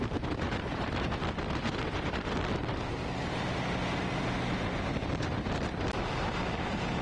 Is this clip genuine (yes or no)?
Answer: yes